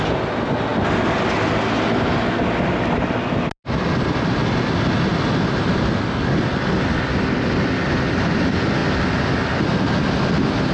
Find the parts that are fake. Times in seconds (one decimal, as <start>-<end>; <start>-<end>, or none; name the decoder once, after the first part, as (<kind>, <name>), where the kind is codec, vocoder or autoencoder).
none